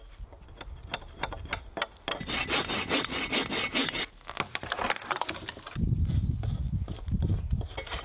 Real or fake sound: real